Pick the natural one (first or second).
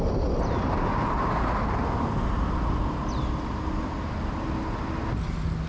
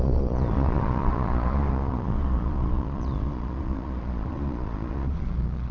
first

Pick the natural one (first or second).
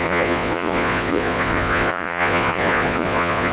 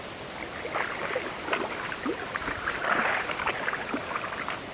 second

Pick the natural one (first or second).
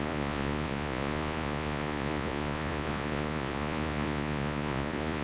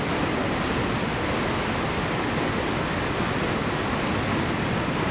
second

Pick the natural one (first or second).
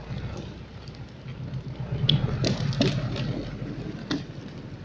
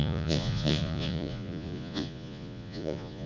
first